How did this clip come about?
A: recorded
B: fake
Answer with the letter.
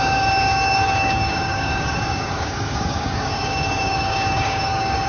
B